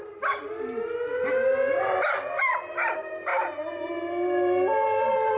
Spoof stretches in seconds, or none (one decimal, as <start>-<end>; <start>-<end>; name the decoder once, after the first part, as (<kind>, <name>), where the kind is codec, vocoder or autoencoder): none